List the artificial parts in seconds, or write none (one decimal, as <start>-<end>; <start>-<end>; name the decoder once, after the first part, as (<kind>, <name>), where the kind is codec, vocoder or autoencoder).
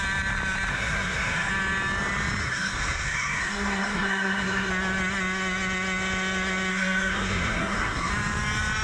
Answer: 0.7-1.5 (codec, SNAC); 2.4-4.7; 6.7-8.1